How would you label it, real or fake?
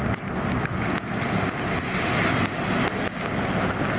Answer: real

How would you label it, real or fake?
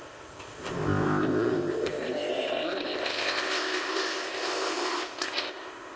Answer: fake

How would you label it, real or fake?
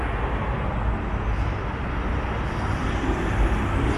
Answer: real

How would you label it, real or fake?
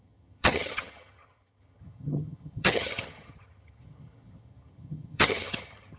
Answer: fake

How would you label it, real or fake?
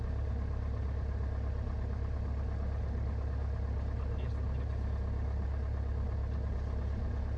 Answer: real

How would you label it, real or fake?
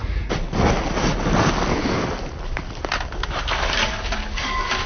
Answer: real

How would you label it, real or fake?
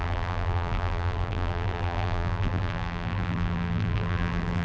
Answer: fake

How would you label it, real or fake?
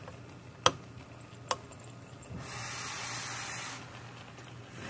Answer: real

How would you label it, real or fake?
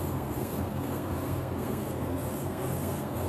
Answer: fake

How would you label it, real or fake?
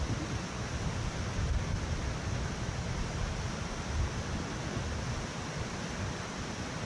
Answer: real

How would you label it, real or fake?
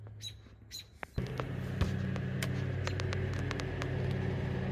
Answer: real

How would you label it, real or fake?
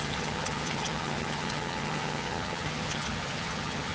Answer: fake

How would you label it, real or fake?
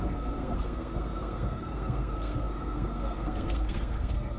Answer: fake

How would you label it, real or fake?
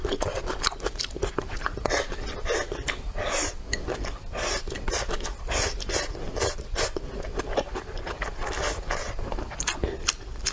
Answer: real